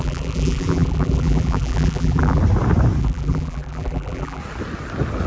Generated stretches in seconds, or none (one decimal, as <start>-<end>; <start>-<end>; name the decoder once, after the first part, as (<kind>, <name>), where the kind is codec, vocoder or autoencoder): 0.0-2.4 (vocoder, BigVGAN v2); 3.0-4.4